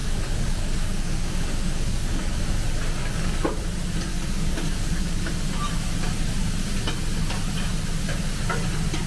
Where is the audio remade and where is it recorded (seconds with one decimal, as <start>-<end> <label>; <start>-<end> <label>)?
0.0-2.4 remade; 2.4-3.0 recorded; 3.0-3.6 remade; 3.6-4.1 recorded; 4.1-5.3 remade; 5.3-9.1 recorded